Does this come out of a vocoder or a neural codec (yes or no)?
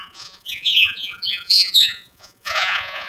yes